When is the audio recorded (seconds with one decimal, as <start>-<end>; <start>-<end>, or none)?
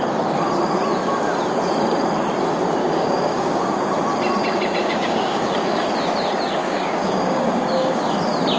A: 0.0-2.8; 3.6-4.8; 5.5-6.6; 8.0-8.6